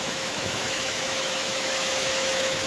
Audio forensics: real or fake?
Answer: fake